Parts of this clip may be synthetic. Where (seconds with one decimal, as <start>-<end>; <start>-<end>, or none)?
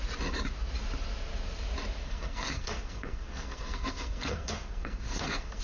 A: 2.0-5.6